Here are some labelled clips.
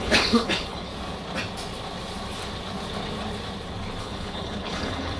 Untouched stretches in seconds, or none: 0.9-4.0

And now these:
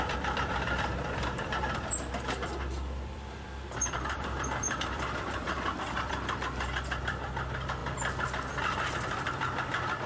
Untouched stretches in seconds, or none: 7.8-8.5

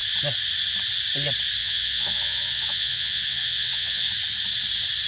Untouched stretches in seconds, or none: 0.0-1.6; 4.1-5.1

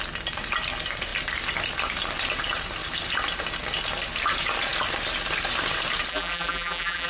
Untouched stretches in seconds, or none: 0.0-6.1

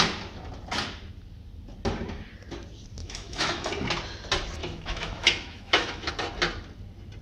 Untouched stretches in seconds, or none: 0.0-3.0; 3.7-4.6; 6.1-7.2